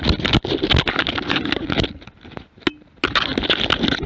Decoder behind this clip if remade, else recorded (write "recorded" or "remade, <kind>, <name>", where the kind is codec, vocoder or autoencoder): recorded